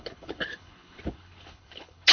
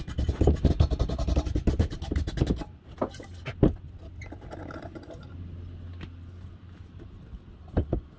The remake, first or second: first